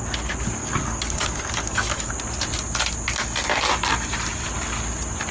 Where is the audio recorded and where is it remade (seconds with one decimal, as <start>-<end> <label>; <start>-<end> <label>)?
0.0-0.6 recorded; 0.6-2.1 remade; 2.1-5.3 recorded